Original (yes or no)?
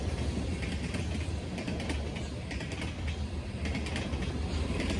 yes